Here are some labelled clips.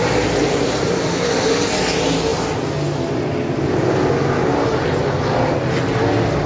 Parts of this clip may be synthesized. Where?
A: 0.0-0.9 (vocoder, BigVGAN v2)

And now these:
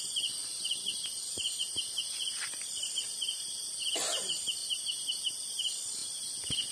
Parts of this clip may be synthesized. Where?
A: 0.0-4.6 (vocoder, BigVGAN v2); 5.3-6.7

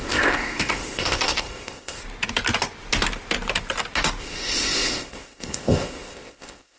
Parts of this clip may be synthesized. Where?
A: 0.0-2.0 (codec, ZipCodec); 4.2-6.8